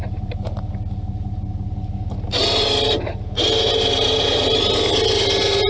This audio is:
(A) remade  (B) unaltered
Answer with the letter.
B